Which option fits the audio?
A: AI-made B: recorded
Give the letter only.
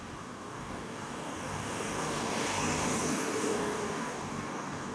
A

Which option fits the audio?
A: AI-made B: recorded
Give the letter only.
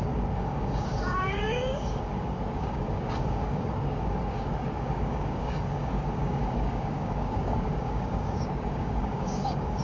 A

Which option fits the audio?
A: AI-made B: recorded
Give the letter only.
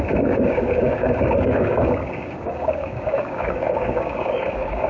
A